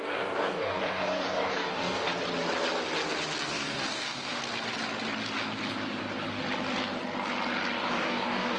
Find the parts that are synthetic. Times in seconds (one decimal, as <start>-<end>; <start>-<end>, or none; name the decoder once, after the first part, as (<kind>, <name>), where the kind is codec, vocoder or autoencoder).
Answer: 0.0-2.1 (codec, DAC); 3.5-4.4; 7.9-8.6